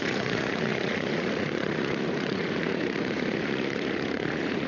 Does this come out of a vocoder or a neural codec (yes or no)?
yes